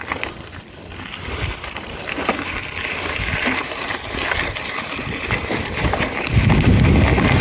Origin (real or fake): fake